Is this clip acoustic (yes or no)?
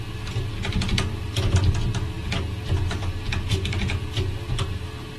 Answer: yes